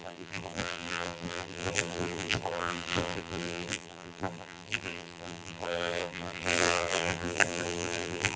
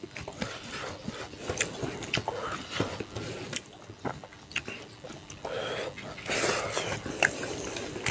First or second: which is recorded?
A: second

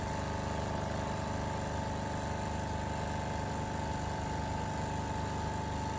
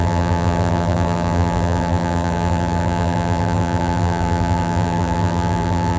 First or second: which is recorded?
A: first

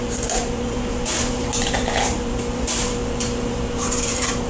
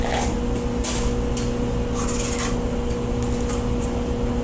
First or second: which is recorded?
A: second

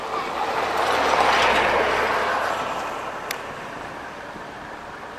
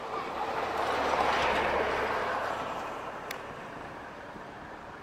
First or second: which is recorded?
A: first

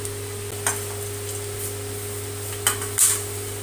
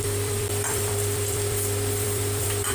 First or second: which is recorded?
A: first